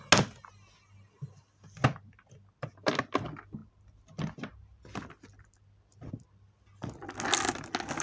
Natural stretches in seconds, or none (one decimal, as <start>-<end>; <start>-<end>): 0.0-8.0

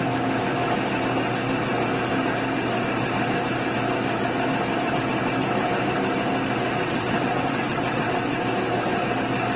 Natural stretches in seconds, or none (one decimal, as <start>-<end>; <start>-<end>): 0.0-6.8; 8.4-9.6

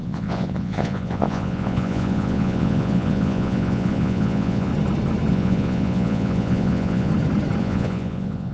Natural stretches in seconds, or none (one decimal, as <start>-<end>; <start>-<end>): 4.7-5.3; 7.1-7.6

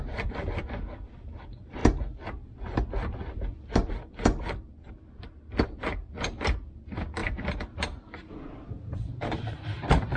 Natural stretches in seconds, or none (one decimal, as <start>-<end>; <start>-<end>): 0.0-7.2

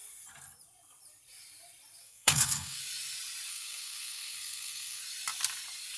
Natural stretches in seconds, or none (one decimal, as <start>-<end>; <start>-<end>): 0.0-2.0; 2.8-3.5; 5.0-6.0

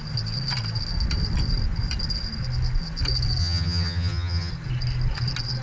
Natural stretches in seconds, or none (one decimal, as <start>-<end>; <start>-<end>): 0.0-3.4; 4.5-5.6